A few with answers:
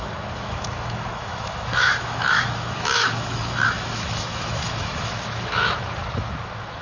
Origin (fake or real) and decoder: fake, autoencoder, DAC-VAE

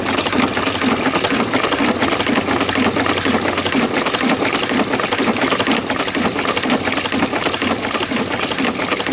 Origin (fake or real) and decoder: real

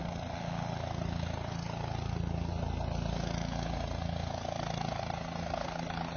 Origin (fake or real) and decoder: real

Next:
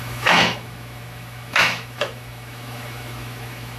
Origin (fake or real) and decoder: fake, autoencoder, DAC-VAE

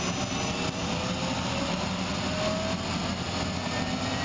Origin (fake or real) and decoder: real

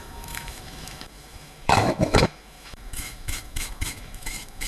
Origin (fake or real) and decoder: fake, autoencoder, DAC-VAE